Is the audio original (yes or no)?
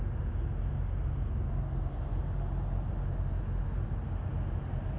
yes